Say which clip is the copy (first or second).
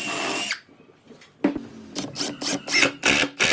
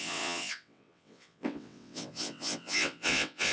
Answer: second